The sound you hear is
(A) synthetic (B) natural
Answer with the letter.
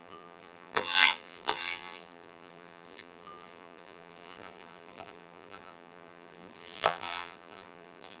A